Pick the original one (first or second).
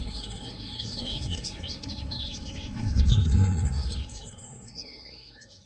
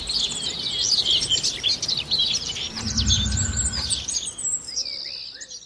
second